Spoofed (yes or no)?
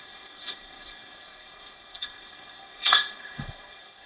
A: yes